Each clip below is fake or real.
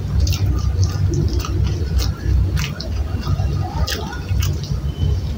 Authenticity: real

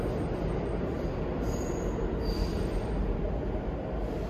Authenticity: real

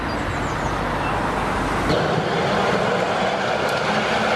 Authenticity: real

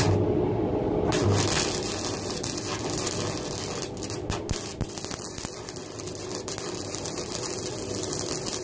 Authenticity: real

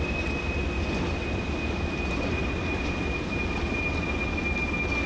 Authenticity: real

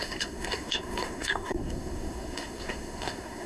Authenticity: fake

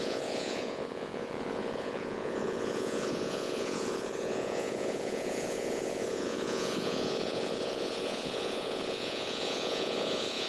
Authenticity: fake